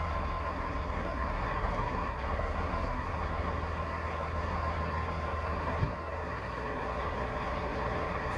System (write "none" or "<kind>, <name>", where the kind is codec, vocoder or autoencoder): codec, SNAC